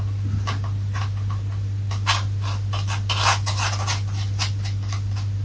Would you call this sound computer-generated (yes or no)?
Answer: no